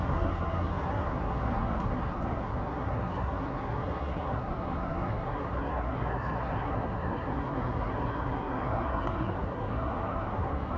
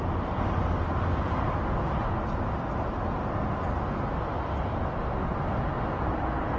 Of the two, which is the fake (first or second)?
first